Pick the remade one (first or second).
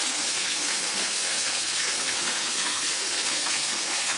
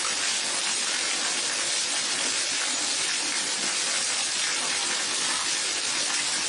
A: first